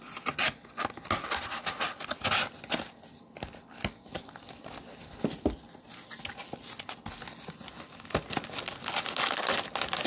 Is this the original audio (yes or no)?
yes